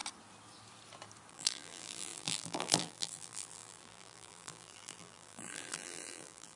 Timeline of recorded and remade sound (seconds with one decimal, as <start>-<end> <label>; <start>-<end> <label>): 0.0-1.3 recorded; 1.3-6.6 remade